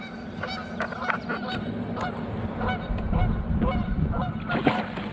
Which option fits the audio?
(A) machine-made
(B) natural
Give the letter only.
B